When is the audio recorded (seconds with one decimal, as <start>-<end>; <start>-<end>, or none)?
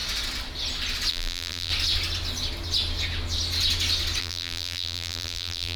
0.0-1.1; 1.7-4.2